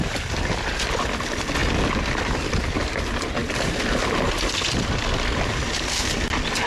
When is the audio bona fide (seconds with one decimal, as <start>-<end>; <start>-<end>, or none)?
0.0-6.7